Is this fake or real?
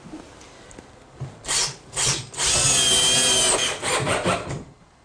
real